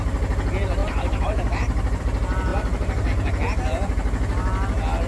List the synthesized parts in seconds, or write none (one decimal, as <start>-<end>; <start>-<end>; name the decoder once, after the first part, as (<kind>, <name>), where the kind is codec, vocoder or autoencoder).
0.8-2.0 (vocoder, BigVGAN v2); 2.5-3.1